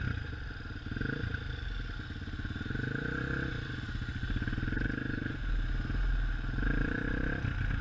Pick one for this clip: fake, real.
real